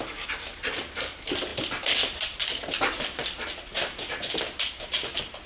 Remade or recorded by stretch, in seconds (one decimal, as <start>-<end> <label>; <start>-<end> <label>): 0.0-1.5 recorded; 1.5-4.4 remade; 4.4-5.5 recorded